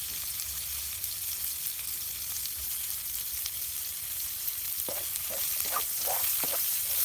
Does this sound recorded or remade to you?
recorded